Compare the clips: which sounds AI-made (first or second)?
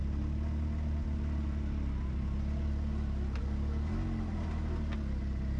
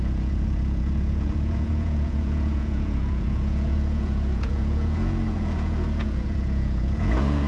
second